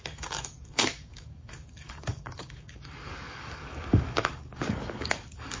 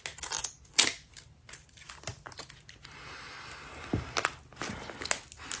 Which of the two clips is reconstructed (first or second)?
first